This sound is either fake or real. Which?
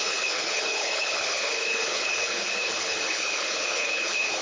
fake